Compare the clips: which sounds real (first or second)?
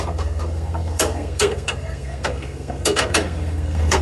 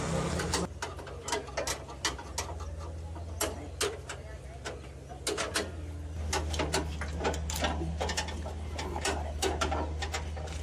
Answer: second